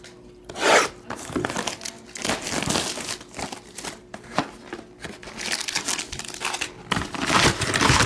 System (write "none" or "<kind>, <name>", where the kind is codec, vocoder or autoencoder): none